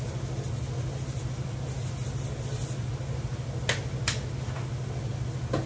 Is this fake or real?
real